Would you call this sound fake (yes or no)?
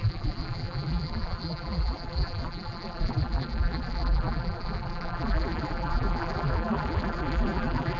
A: yes